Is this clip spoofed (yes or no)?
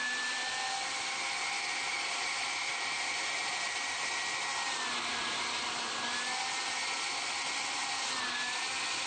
no